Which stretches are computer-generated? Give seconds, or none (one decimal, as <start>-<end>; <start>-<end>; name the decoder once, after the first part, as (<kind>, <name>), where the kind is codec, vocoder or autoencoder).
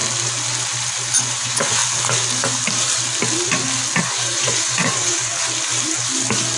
1.2-1.8 (vocoder, Vocos); 4.0-5.3